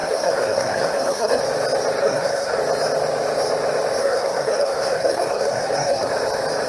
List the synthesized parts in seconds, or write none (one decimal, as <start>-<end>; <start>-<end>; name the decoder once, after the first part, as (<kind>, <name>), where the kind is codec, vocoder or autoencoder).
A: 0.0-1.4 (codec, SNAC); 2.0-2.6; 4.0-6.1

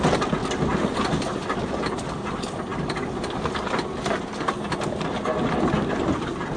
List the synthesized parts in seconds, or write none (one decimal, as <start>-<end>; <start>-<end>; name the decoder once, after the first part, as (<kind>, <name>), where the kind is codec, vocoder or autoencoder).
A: none

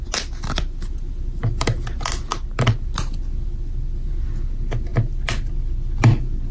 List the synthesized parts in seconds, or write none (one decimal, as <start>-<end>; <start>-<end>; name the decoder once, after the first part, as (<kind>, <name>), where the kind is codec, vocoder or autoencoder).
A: none

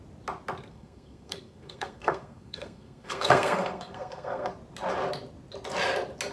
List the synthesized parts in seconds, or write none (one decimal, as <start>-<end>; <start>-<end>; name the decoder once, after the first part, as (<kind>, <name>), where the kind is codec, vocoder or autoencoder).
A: 0.7-4.5 (codec, SNAC)